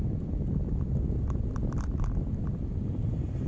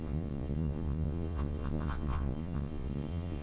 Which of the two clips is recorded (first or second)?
first